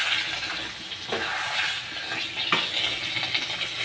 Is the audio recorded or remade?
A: recorded